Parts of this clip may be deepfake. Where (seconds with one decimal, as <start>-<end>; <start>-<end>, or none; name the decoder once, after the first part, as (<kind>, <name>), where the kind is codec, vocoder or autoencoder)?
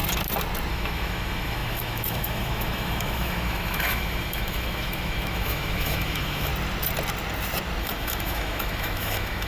0.7-6.5 (autoencoder, DAC-VAE); 7.8-9.5